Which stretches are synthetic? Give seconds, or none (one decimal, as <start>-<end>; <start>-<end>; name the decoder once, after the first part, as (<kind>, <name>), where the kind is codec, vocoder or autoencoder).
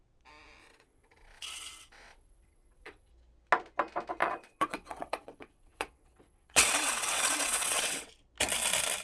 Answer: 0.6-3.1 (vocoder, WaveNeXt); 4.2-8.1